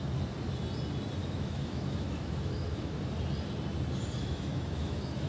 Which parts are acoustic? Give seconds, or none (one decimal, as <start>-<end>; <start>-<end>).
0.0-1.2; 3.0-4.2